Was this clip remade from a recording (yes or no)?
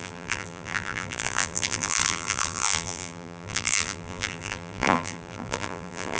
yes